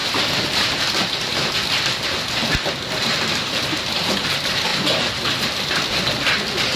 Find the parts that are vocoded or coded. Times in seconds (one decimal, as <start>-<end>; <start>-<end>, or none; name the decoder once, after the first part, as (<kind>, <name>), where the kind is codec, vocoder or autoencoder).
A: 0.0-0.7 (vocoder, BigVGAN v2); 4.7-5.6